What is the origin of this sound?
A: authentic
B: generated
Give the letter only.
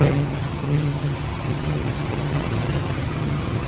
B